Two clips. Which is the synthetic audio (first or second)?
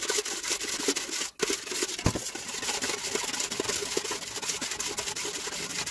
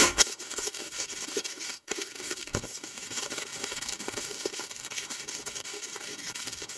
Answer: second